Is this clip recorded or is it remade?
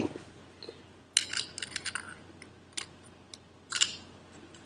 recorded